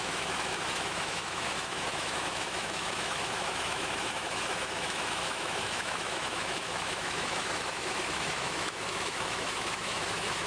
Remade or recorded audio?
remade